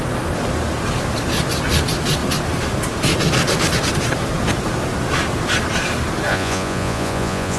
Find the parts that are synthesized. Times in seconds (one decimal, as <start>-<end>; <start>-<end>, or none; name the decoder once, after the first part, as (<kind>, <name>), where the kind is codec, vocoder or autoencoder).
6.3-7.6 (vocoder, Vocos)